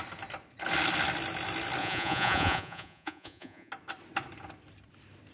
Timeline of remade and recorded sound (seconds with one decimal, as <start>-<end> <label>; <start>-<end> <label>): 0.0-1.8 recorded; 1.8-3.7 remade; 3.7-5.3 recorded

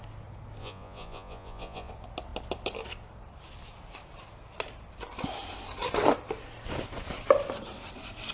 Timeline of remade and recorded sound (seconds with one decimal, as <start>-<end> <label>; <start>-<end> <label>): 0.0-0.6 recorded; 0.6-1.9 remade; 1.9-8.3 recorded